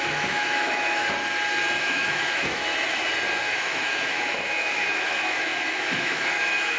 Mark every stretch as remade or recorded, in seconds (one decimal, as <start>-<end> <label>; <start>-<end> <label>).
0.0-1.0 remade; 1.0-1.8 recorded; 1.8-2.7 remade; 2.7-3.4 recorded; 3.4-6.8 remade